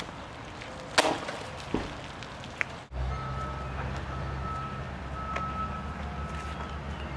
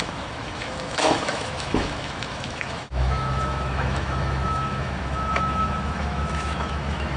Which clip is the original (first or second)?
first